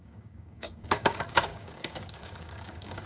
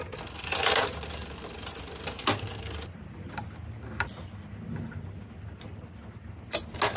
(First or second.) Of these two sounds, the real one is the second